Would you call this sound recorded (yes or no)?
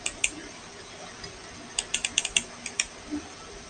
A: yes